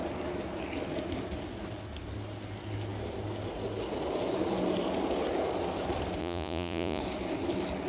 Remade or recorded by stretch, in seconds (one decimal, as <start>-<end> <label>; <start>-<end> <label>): 0.0-6.2 recorded; 6.2-7.0 remade; 7.0-7.9 recorded